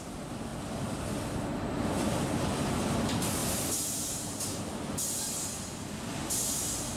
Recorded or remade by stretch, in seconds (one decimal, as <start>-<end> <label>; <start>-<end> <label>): 0.0-3.4 recorded; 3.4-4.8 remade; 4.8-7.0 recorded